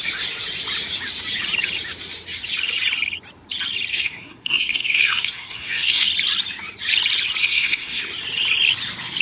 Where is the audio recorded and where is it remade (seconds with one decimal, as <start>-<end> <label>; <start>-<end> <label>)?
0.0-3.9 recorded; 3.9-6.1 remade; 6.1-7.4 recorded; 7.4-8.0 remade; 8.0-9.2 recorded